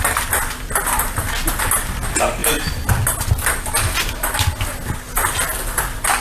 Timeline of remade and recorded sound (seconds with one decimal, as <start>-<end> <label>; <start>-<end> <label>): 0.0-6.2 recorded